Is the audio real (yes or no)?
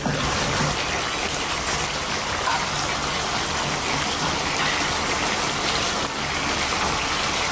yes